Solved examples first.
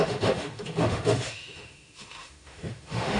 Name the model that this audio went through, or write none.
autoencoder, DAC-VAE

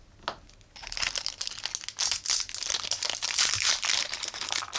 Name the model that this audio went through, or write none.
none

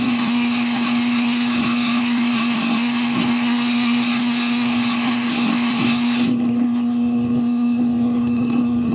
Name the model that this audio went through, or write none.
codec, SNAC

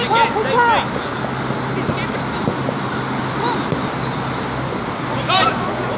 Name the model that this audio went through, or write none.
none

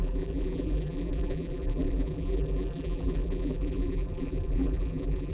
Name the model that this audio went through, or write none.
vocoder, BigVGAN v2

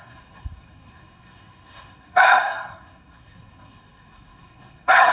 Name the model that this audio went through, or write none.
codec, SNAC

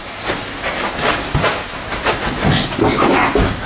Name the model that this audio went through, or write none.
none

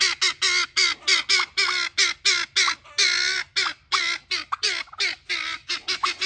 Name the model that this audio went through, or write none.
none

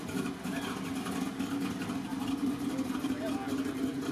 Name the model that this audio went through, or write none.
none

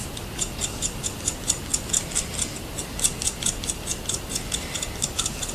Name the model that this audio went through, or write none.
none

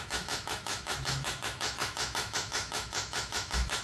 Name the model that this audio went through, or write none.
autoencoder, DAC-VAE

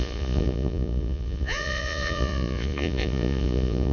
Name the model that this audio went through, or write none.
vocoder, Vocos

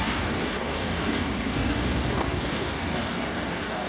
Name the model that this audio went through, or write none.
codec, DAC